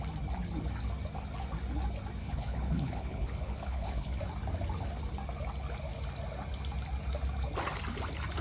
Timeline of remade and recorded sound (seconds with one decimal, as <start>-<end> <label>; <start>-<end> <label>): 0.0-2.2 recorded; 2.2-4.2 remade; 4.2-8.4 recorded

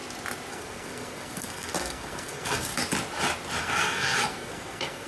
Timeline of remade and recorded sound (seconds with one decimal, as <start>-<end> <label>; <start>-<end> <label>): 0.0-0.5 recorded; 0.5-2.7 remade; 2.7-3.6 recorded; 3.6-5.1 remade

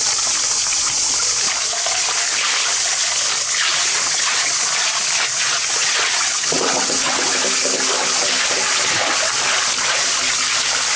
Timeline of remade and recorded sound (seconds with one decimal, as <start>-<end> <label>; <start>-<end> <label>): 0.0-3.7 recorded; 3.7-4.4 remade; 4.4-5.3 recorded; 5.3-7.2 remade; 7.2-11.0 recorded

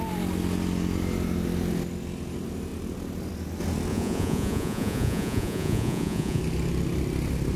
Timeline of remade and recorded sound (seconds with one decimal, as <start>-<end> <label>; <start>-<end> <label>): 0.0-3.9 recorded; 3.9-6.4 remade; 6.4-7.6 recorded

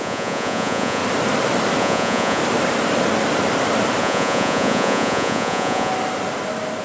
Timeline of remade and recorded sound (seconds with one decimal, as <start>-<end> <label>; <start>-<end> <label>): 0.0-1.0 remade; 1.0-1.8 recorded; 1.8-2.4 remade; 2.4-4.0 recorded; 4.0-5.9 remade; 5.9-6.8 recorded

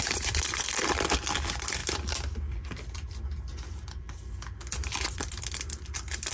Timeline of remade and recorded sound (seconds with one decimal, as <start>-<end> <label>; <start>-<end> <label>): 0.0-1.8 remade; 1.8-4.9 recorded; 4.9-6.3 remade